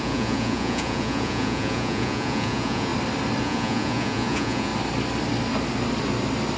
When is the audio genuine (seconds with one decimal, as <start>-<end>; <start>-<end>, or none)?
2.9-3.4; 4.7-6.6